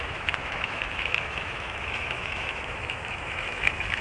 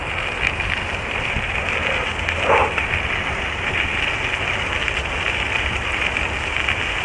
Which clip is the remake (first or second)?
first